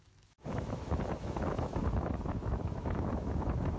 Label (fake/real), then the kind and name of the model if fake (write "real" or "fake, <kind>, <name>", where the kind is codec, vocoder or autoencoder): fake, autoencoder, DAC-VAE